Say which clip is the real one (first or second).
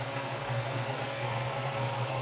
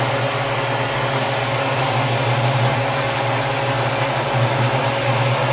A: second